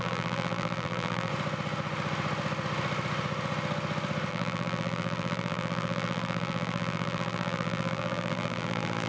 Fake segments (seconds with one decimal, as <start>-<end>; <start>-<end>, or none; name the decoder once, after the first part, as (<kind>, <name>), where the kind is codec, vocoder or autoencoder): 0.0-1.3 (vocoder, BigVGAN v2); 4.3-9.1